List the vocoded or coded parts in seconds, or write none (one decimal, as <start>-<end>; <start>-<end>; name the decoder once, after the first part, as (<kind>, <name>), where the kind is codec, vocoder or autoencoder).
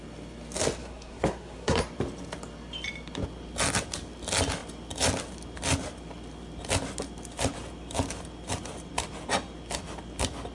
0.8-1.8 (codec, SNAC)